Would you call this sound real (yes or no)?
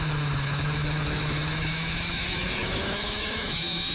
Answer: no